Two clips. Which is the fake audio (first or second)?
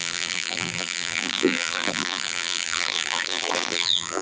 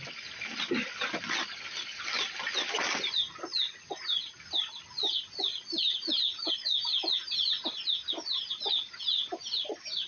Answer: first